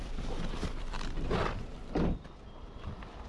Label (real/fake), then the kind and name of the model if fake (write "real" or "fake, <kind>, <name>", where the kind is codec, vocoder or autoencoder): fake, vocoder, BigVGAN v2